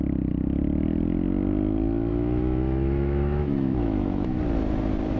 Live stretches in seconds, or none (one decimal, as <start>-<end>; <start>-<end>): 0.0-2.1; 4.4-5.2